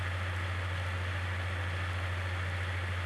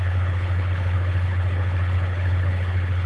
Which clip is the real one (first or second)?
first